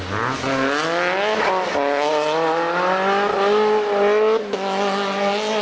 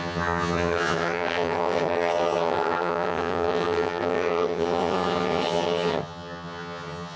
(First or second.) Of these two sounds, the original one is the first